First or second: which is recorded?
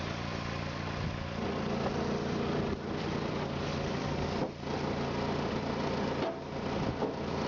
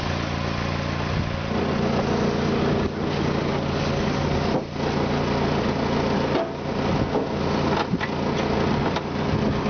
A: second